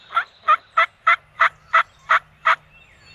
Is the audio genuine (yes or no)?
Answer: yes